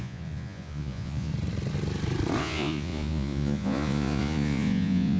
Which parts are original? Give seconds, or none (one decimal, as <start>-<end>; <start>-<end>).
1.3-2.4